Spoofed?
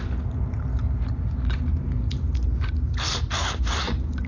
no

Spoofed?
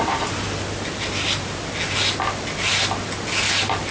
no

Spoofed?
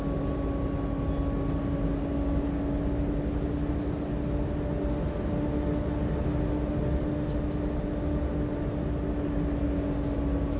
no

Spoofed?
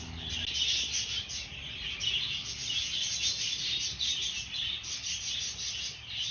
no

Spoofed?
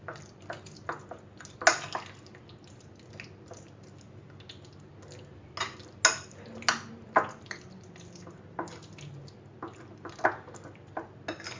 no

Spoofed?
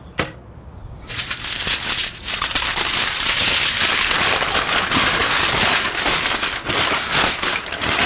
no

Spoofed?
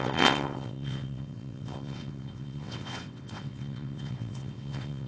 yes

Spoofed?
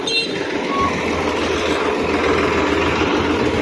no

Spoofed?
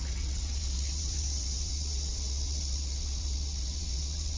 yes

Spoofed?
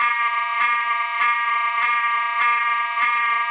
yes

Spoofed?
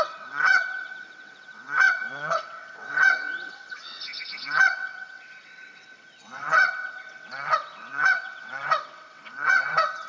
yes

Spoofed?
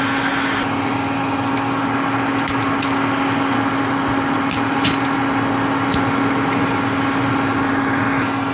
no